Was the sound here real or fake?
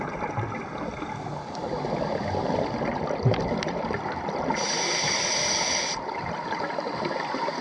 real